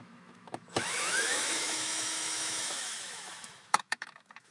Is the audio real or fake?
fake